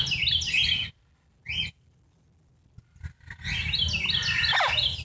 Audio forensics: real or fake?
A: real